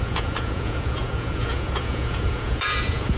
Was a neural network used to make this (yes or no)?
yes